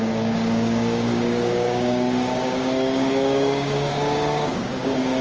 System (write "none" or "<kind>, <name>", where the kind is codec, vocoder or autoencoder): codec, DAC